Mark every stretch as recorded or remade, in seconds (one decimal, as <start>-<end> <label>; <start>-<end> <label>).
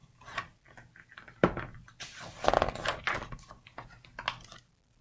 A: 0.0-5.0 recorded